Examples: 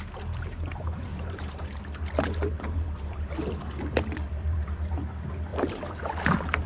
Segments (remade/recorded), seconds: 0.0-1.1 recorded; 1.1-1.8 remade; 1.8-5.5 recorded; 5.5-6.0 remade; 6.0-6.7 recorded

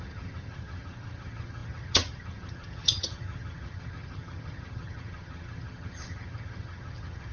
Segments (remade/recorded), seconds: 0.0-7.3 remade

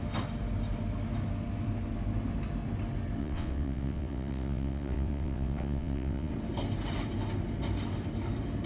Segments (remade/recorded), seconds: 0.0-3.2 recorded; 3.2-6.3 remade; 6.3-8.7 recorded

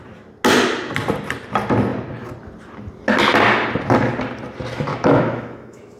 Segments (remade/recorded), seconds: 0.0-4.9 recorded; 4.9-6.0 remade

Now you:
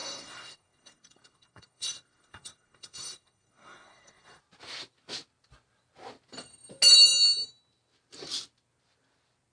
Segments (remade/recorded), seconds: 0.0-4.4 remade; 4.4-9.5 recorded

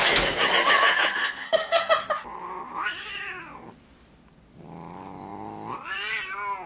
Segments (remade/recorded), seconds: 0.0-1.2 recorded; 1.2-1.9 remade; 1.9-6.7 recorded

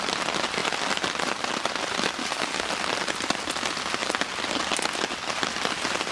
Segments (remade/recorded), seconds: 0.0-2.2 recorded; 2.2-2.7 remade; 2.7-6.1 recorded